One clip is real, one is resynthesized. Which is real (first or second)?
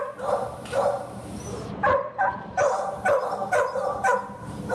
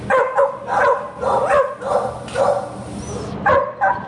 second